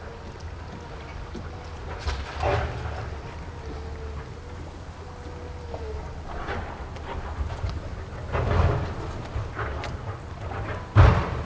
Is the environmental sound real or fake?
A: real